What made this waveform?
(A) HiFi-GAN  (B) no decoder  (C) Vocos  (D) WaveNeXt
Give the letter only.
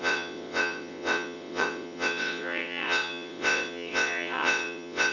D